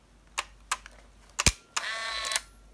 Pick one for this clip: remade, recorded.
recorded